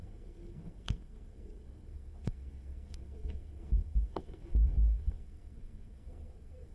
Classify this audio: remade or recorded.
remade